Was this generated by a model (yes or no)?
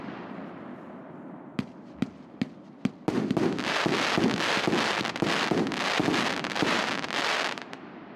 no